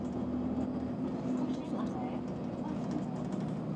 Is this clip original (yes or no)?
yes